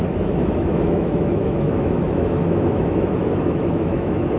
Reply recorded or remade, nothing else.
remade